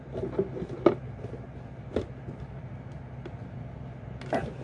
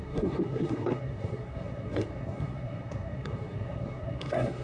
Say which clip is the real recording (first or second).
first